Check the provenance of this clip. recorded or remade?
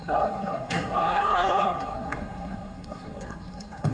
remade